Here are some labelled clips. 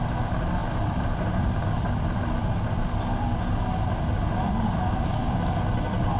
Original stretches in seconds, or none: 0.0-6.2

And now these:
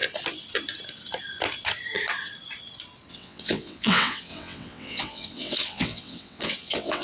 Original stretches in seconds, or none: 0.0-3.1

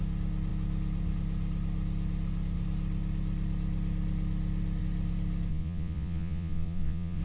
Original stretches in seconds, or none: 0.0-5.5

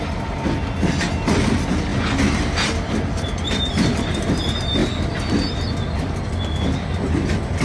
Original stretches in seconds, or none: 0.0-7.6

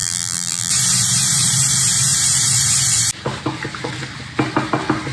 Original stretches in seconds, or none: 0.7-5.1

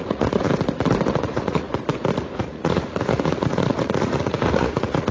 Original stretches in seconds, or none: 0.5-1.2; 1.7-2.4

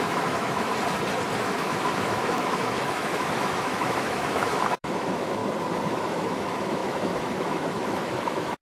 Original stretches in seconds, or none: 0.7-1.4; 5.4-5.9

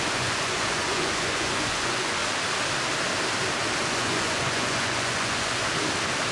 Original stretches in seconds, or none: 2.2-3.8; 5.6-6.3